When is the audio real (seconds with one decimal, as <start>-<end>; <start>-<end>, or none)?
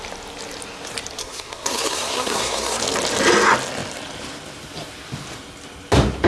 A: 0.0-1.2; 2.8-6.3